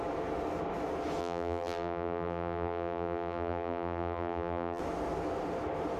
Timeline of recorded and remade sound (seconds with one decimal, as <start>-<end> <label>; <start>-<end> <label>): 0.0-1.2 recorded; 1.2-4.8 remade; 4.8-6.0 recorded